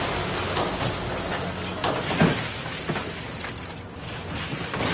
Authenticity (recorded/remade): recorded